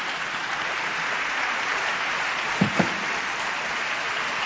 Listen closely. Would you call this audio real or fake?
fake